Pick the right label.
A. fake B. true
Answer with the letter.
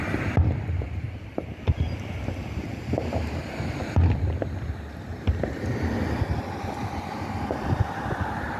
B